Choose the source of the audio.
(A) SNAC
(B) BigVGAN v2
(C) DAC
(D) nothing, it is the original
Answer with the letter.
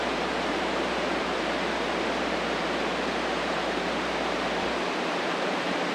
B